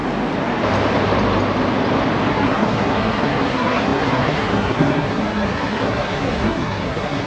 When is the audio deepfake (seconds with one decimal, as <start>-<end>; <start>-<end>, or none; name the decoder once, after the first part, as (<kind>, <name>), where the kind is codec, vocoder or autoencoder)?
2.3-7.3 (codec, SNAC)